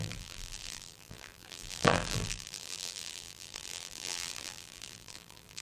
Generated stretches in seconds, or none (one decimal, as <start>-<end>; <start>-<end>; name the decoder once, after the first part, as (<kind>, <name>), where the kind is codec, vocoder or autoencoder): 0.0-5.6 (vocoder, BigVGAN v2)